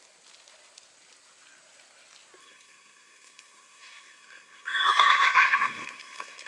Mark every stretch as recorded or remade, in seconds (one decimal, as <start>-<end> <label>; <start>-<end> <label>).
0.0-2.4 recorded; 2.4-6.5 remade